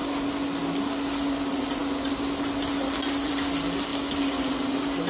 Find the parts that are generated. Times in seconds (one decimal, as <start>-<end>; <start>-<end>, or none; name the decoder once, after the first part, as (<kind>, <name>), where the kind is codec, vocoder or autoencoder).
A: none